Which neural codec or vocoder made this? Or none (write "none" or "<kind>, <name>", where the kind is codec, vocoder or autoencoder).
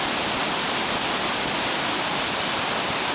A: none